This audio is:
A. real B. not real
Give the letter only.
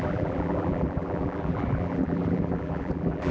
B